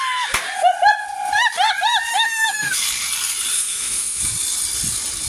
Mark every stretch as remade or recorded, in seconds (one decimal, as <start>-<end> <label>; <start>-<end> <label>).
0.0-2.1 recorded; 2.1-2.8 remade; 2.8-3.5 recorded; 3.5-4.2 remade; 4.2-5.3 recorded